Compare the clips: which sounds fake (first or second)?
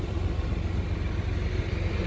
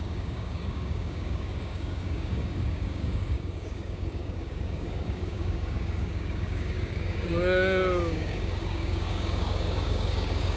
second